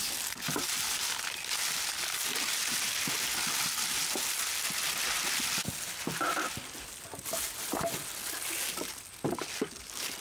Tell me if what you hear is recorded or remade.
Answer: recorded